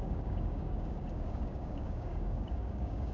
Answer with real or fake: fake